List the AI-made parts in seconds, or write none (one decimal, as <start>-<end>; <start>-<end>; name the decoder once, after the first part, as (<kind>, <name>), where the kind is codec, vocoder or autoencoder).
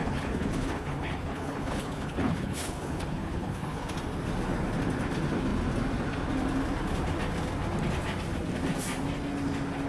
0.0-3.9 (codec, HILCodec)